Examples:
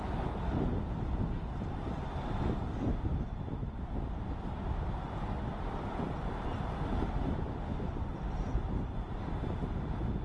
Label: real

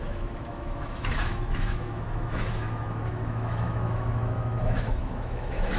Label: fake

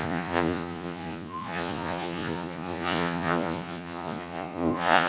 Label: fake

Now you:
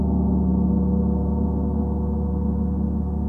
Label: real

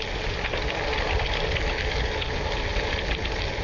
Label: real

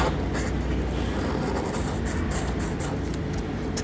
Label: real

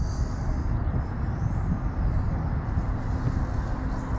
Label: real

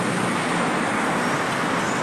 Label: real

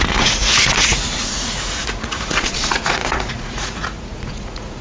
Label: fake